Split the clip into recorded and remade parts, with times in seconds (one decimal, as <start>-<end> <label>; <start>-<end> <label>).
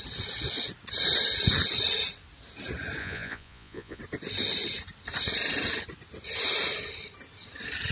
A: 0.0-3.0 recorded; 3.0-4.0 remade; 4.0-7.9 recorded